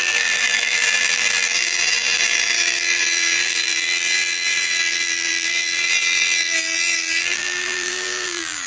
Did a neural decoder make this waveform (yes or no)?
yes